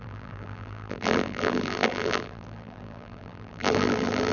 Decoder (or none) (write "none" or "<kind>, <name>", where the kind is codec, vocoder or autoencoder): vocoder, BigVGAN v2